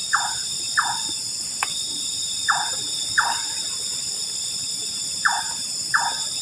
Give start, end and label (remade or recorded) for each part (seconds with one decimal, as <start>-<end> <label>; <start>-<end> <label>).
0.0-0.5 remade; 0.5-2.2 recorded; 2.2-5.7 remade; 5.7-6.4 recorded